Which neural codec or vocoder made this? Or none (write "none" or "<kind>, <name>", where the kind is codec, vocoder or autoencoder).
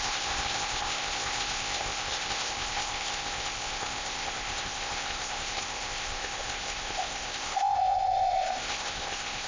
codec, ZipCodec